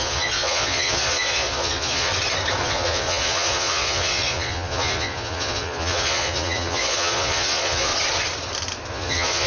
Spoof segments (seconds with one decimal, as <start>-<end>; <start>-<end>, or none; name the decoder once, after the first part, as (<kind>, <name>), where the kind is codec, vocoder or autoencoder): 0.0-2.1 (vocoder, Vocos); 2.6-7.9; 8.9-9.5